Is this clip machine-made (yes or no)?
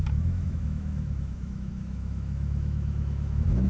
yes